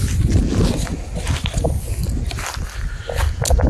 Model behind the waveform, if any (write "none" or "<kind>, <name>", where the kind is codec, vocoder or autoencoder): none